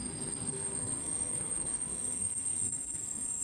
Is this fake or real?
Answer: fake